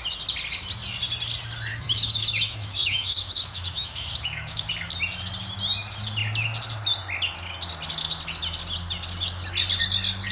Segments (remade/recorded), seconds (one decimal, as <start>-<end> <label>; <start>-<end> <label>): 0.0-1.7 recorded; 1.7-4.7 remade; 4.7-10.3 recorded